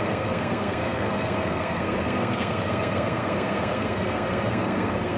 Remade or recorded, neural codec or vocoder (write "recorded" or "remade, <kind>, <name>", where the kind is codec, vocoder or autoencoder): remade, codec, SNAC